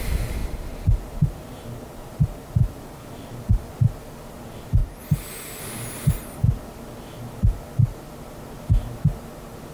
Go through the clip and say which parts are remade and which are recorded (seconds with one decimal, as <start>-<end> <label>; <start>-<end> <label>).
0.0-0.4 recorded; 0.4-3.7 remade; 3.7-9.7 recorded